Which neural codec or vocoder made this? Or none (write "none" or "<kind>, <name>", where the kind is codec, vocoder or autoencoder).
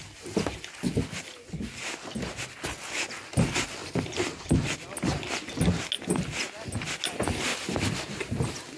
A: none